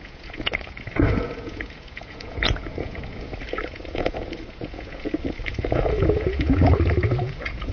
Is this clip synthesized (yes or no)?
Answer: yes